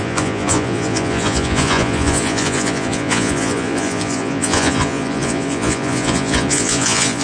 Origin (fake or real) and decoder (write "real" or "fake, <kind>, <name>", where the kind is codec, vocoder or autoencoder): fake, vocoder, Vocos